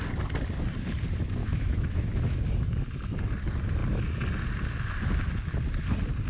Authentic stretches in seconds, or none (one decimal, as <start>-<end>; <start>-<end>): 0.0-1.4; 2.4-6.3